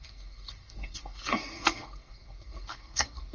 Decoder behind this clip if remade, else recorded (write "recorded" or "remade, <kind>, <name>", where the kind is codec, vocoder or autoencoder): remade, codec, SNAC